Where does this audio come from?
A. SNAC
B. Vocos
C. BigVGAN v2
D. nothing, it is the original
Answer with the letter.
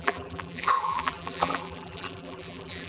C